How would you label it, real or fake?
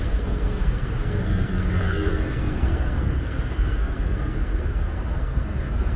fake